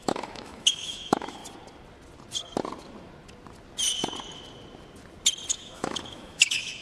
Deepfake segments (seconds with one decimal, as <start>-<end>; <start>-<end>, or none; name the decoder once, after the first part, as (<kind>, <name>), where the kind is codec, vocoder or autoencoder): 0.0-1.4 (autoencoder, DAC-VAE); 5.5-6.8